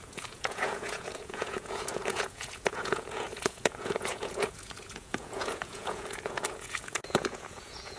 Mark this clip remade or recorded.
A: remade